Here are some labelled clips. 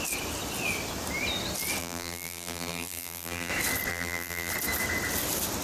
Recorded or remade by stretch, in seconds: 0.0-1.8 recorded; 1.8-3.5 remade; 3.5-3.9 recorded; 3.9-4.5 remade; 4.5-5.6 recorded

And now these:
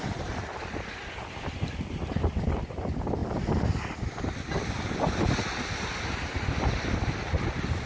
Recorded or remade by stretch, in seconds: 0.0-7.9 recorded

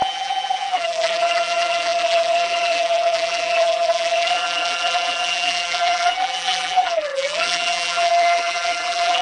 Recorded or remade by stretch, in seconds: 0.0-9.2 remade

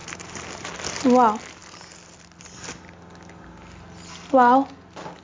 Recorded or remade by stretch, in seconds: 0.0-0.7 remade; 0.7-5.2 recorded

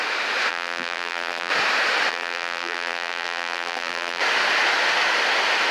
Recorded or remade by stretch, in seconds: 0.0-0.5 recorded; 0.5-1.5 remade; 1.5-2.1 recorded; 2.1-4.2 remade; 4.2-5.7 recorded

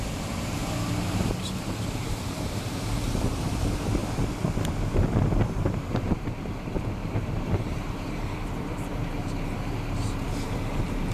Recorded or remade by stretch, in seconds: 0.0-0.6 remade; 0.6-2.0 recorded; 2.0-4.0 remade; 4.0-5.4 recorded; 5.4-11.1 remade